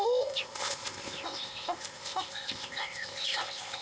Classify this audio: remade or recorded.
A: remade